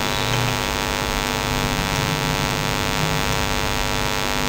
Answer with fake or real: real